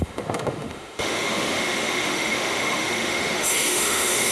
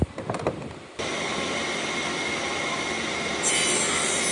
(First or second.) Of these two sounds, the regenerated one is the first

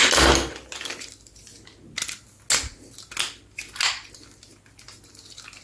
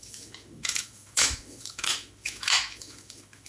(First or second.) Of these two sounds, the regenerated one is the second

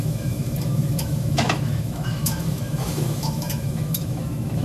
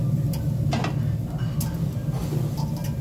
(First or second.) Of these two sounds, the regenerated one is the first